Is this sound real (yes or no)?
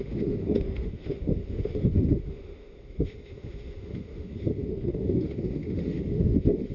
no